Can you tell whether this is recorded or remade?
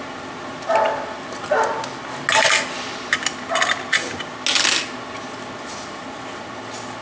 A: recorded